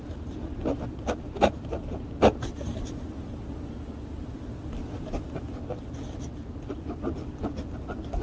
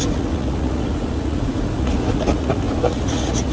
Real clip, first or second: first